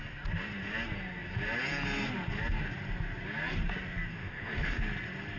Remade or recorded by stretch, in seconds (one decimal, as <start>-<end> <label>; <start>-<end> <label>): 0.0-4.1 recorded; 4.1-4.8 remade; 4.8-5.4 recorded